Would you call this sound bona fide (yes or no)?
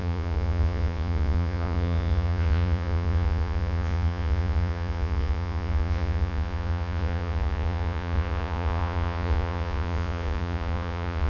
no